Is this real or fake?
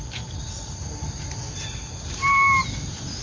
real